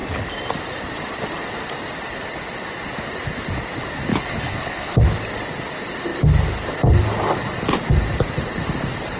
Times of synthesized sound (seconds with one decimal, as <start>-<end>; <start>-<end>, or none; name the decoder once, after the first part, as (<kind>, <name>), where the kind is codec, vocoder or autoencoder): 4.1-5.0 (codec, HILCodec)